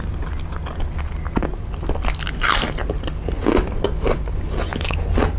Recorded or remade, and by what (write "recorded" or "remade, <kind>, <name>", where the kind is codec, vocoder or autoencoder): recorded